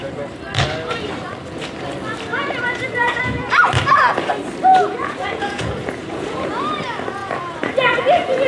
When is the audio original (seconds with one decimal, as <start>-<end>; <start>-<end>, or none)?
0.0-2.3; 3.2-4.7; 6.6-7.2